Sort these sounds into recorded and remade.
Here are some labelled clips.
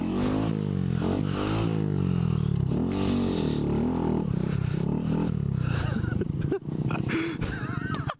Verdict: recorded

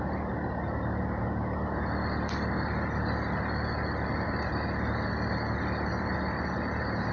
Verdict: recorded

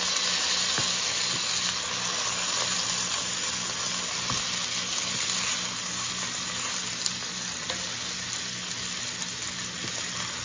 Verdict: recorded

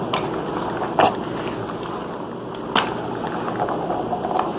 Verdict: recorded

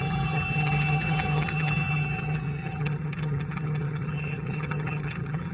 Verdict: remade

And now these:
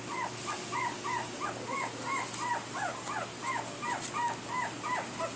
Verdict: recorded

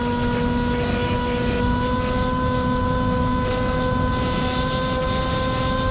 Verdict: recorded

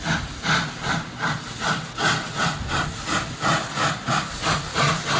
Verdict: recorded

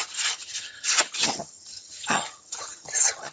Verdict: remade